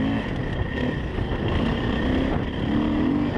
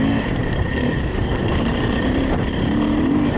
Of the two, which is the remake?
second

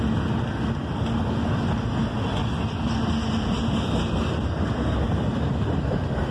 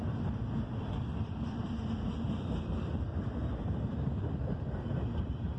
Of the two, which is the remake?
second